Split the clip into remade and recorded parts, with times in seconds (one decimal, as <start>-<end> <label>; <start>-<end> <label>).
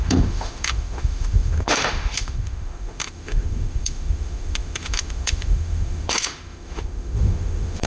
0.0-7.9 remade